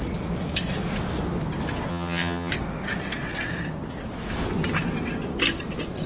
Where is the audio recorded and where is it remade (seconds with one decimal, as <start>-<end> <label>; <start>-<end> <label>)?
0.0-1.9 recorded; 1.9-2.5 remade; 2.5-6.1 recorded